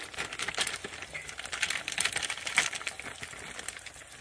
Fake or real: fake